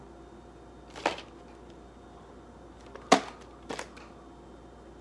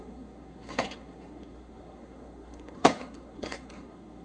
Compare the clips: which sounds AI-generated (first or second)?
second